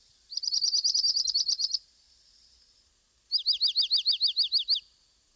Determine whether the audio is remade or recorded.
recorded